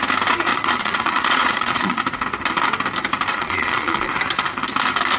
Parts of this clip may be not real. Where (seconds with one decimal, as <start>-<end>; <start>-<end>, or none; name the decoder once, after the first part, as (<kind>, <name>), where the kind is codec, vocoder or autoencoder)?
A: 0.5-2.0 (vocoder, Vocos); 3.3-4.1